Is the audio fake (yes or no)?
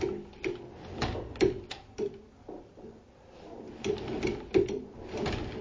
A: no